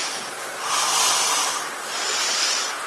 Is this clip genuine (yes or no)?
yes